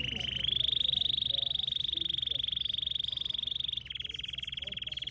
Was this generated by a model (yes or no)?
no